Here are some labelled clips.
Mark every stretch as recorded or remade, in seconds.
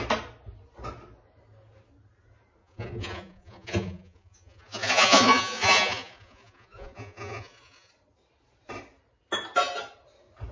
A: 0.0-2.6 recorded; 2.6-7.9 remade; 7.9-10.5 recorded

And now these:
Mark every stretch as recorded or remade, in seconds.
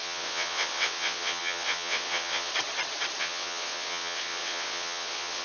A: 0.0-2.5 remade; 2.5-3.2 recorded; 3.2-5.4 remade